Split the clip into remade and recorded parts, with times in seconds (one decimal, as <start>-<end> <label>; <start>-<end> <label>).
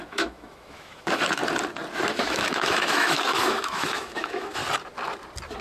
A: 0.0-1.4 remade; 1.4-2.1 recorded; 2.1-4.6 remade; 4.6-5.6 recorded